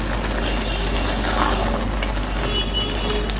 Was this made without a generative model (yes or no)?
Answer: yes